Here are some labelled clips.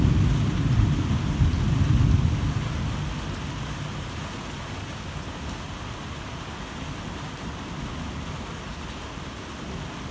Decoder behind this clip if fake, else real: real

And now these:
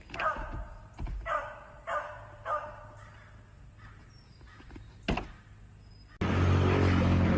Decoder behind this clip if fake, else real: real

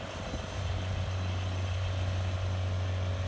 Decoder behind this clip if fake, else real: real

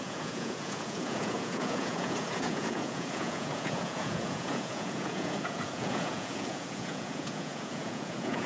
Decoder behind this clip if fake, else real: fake, vocoder, Vocos